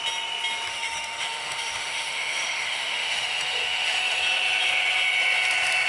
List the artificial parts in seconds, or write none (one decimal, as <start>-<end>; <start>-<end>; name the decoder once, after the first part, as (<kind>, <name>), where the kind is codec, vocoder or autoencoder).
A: 0.7-4.2 (autoencoder, DAC-VAE)